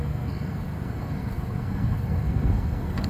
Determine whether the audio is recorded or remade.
remade